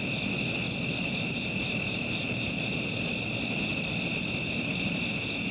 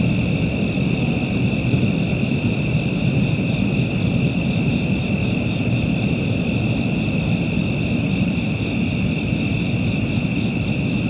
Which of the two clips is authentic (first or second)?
first